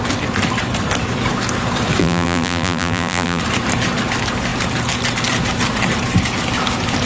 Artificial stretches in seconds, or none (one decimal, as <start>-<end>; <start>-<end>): 2.0-3.4